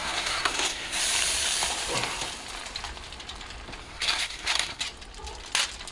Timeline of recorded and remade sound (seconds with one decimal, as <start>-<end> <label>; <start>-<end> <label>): 0.0-1.0 remade; 1.0-3.8 recorded; 3.8-4.8 remade; 4.8-5.9 recorded